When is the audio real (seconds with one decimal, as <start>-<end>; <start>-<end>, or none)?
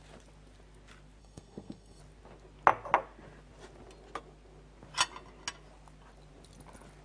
0.0-1.2; 2.0-7.0